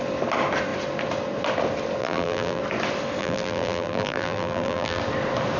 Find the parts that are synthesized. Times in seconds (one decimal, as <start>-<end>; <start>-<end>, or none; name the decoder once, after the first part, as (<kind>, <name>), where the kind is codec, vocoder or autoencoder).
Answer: 2.0-2.6 (vocoder, BigVGAN v2); 3.2-5.0